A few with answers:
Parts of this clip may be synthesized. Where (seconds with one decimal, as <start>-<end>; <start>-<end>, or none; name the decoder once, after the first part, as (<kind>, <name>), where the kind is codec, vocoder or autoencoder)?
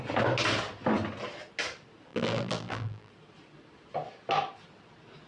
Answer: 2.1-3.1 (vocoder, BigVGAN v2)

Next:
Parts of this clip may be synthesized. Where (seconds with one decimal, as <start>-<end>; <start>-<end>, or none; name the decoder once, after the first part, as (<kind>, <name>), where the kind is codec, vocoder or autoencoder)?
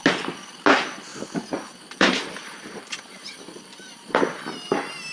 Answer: 1.1-4.2 (vocoder, BigVGAN v2)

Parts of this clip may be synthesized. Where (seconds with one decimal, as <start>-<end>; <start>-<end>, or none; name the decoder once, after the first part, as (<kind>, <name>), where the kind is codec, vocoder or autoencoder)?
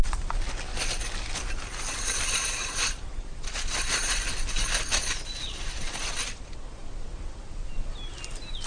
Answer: 2.4-4.2 (vocoder, BigVGAN v2); 5.4-6.1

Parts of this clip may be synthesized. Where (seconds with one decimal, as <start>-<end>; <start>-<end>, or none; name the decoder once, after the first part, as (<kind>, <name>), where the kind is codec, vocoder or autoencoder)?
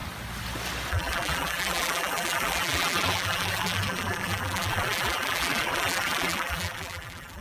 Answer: 0.9-7.4 (vocoder, BigVGAN v2)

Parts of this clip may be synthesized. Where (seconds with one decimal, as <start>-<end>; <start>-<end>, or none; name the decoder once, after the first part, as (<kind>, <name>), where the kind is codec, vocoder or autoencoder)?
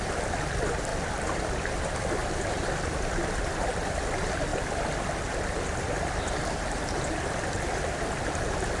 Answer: 0.9-1.7 (vocoder, BigVGAN v2); 2.2-3.6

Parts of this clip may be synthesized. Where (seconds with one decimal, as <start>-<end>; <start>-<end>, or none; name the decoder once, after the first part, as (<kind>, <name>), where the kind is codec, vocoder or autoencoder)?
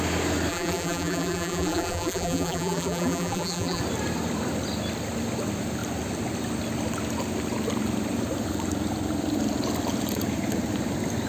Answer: 0.5-3.8 (vocoder, BigVGAN v2)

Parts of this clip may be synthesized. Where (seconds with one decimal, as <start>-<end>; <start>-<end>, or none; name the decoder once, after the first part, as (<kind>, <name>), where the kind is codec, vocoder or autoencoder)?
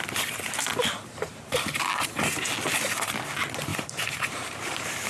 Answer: 1.3-2.4 (vocoder, BigVGAN v2); 3.7-5.1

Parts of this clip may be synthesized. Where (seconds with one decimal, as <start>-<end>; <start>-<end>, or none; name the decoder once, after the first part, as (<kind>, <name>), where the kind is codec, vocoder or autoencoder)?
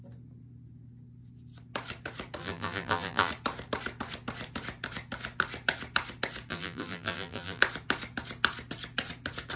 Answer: 2.4-3.3 (vocoder, BigVGAN v2); 6.5-7.6